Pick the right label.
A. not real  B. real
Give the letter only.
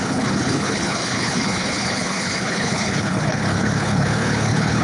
A